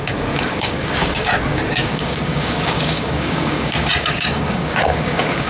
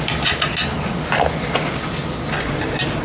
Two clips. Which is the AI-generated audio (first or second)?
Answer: first